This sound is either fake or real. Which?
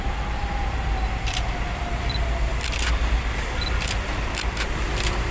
real